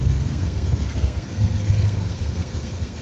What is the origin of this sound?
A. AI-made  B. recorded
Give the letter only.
A